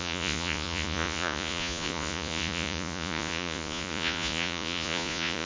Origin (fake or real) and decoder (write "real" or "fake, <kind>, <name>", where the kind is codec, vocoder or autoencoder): fake, vocoder, Vocos